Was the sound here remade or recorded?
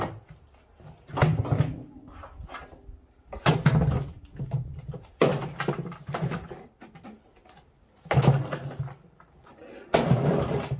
recorded